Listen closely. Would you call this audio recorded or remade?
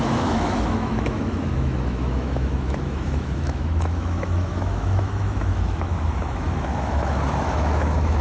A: remade